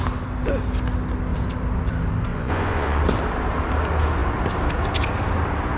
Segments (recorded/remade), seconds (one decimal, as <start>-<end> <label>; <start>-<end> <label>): 0.0-2.3 recorded; 2.3-3.0 remade; 3.0-5.8 recorded